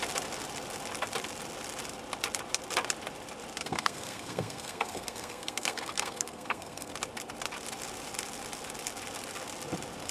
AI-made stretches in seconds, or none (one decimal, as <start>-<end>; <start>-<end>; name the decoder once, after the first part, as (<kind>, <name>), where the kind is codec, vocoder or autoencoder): 3.6-6.9 (codec, SNAC)